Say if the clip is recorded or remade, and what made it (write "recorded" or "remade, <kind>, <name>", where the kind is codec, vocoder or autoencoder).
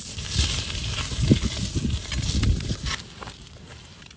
recorded